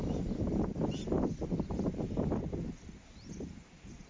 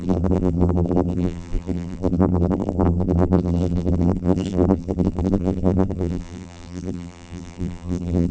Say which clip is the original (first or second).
first